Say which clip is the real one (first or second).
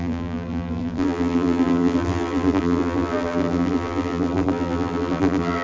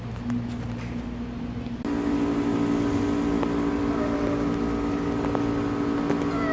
second